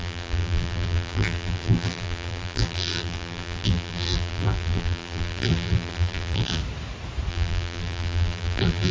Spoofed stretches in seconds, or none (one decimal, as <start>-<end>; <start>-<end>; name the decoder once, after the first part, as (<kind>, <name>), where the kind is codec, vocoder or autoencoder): 0.0-6.6 (vocoder, BigVGAN v2); 7.3-8.9